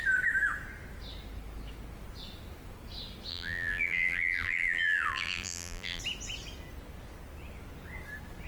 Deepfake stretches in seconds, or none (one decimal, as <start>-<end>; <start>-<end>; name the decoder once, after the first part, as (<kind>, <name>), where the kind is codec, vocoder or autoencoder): 3.3-6.0 (vocoder, BigVGAN v2)